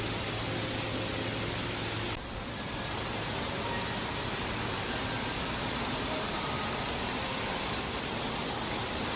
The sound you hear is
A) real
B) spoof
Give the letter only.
A